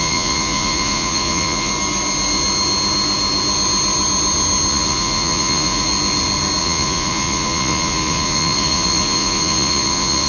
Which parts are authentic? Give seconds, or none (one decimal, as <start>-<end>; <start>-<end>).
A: 1.7-4.7; 5.9-6.6